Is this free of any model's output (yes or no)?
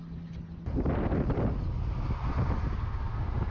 yes